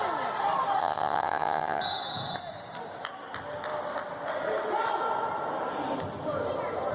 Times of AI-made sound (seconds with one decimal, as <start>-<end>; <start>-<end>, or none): 0.8-1.8